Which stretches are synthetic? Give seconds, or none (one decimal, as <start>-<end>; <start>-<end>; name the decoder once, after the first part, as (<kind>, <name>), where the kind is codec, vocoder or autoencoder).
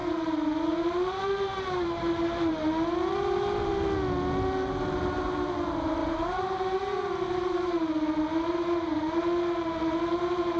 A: 0.0-0.5 (vocoder, BigVGAN v2); 1.5-2.5; 3.1-3.7; 6.0-9.2